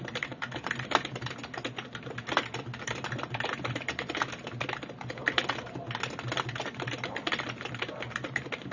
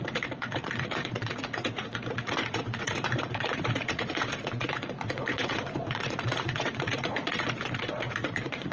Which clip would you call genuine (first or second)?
first